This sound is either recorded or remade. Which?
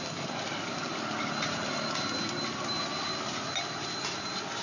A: recorded